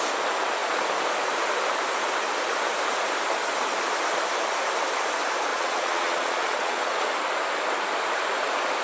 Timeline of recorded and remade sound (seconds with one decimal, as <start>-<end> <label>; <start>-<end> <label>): 0.0-5.5 recorded; 5.5-7.1 remade; 7.1-8.8 recorded